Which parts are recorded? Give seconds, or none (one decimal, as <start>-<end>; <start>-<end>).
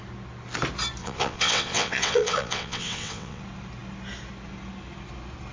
0.0-1.0; 3.4-5.5